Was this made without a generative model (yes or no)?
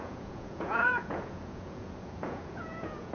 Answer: no